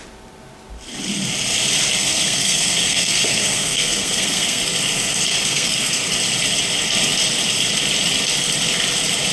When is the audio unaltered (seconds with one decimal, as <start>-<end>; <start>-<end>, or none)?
0.0-2.0; 4.6-5.3; 6.1-9.3